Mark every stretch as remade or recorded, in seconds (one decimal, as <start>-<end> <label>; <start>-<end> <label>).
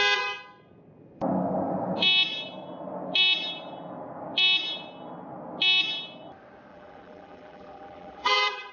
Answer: 0.0-6.7 recorded; 6.7-8.7 remade